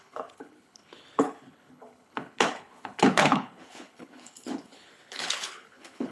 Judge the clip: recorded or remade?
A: remade